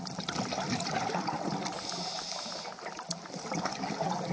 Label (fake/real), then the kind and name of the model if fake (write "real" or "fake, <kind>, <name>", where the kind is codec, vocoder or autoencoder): real